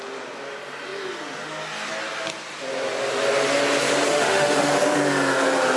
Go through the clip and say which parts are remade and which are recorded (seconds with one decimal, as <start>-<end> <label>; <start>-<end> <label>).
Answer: 0.0-4.1 recorded; 4.1-4.7 remade; 4.7-5.8 recorded